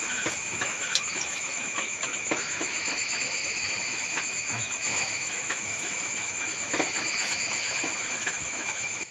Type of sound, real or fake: fake